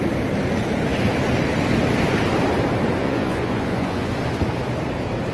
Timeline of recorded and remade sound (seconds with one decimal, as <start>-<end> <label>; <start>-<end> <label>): 0.0-3.0 recorded; 3.0-4.1 remade; 4.1-5.3 recorded